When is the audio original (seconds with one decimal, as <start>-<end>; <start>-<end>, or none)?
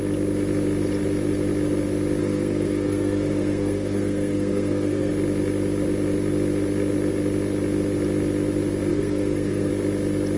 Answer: 0.0-2.2; 5.1-8.9; 9.7-10.4